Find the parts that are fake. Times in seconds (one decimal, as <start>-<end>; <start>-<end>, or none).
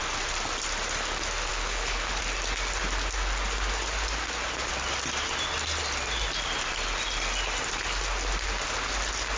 1.5-2.2